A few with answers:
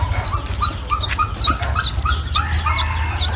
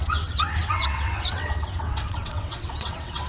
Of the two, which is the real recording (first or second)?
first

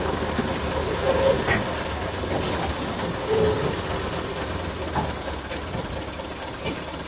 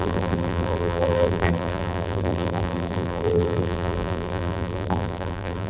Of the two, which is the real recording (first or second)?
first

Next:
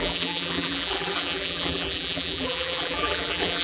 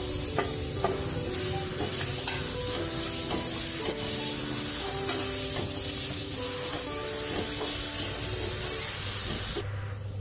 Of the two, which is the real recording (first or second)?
second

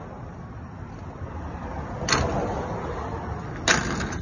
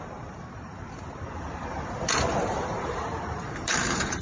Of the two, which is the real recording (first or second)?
first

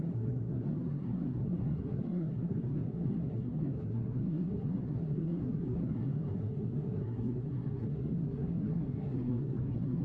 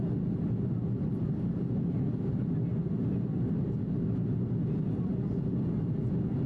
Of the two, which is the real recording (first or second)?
second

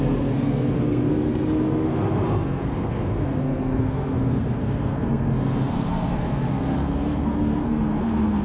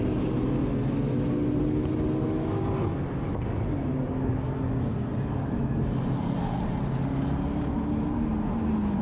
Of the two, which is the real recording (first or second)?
second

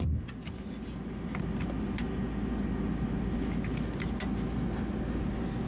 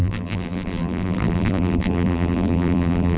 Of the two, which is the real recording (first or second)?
first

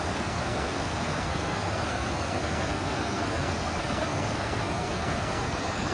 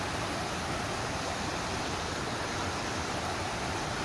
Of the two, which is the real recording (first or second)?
second